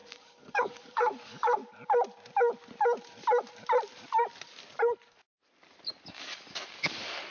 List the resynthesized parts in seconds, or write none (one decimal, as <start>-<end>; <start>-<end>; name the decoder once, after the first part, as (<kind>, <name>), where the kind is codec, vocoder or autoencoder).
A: 0.0-1.6 (codec, DAC); 6.0-7.3